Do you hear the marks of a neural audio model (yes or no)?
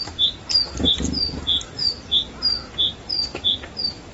yes